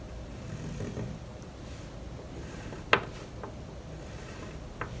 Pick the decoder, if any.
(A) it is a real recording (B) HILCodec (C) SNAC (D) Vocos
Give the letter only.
A